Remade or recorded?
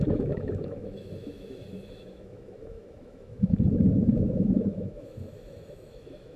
remade